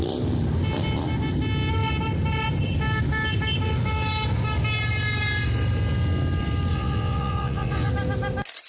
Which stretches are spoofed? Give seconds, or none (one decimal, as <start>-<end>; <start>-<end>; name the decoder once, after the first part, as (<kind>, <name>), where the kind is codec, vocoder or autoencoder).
6.7-7.9 (vocoder, WaveNeXt)